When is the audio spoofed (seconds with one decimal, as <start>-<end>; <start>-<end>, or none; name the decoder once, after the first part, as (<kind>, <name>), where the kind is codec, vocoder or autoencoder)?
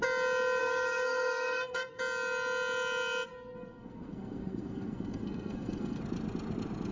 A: 0.6-2.0 (codec, SNAC); 3.3-6.0